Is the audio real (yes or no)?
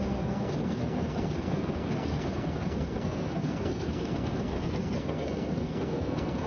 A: no